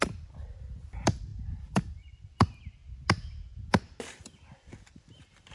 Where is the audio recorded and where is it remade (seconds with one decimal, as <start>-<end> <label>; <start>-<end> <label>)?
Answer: 0.0-2.8 remade; 2.8-3.5 recorded; 3.5-5.5 remade